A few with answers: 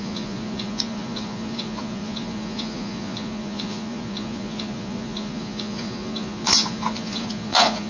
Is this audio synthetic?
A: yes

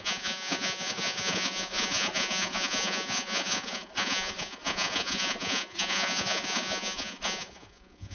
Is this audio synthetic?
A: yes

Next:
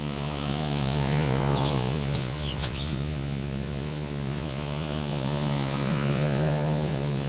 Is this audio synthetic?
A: yes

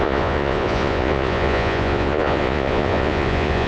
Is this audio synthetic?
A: yes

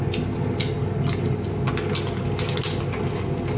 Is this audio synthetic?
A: no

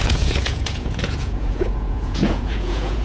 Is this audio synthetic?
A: yes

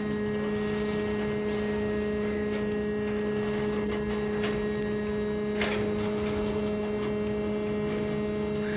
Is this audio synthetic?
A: no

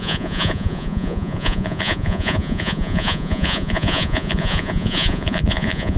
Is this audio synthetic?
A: yes